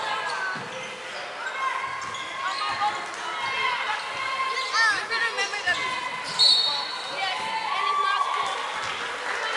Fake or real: real